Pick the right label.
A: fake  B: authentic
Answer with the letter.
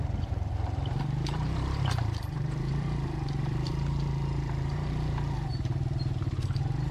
A